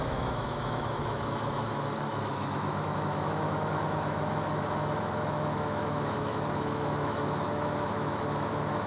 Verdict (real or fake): fake